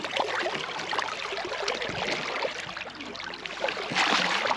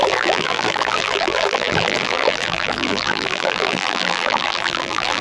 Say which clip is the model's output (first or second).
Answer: second